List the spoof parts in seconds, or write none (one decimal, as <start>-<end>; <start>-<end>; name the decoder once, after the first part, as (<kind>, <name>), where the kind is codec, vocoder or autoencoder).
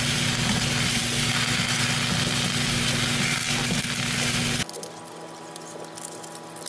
none